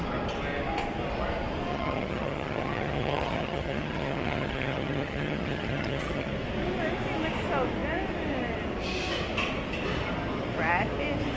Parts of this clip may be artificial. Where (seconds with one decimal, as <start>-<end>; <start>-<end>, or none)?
1.7-6.3